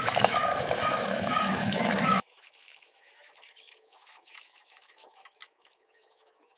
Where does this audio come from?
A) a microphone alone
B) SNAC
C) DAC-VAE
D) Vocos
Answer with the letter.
C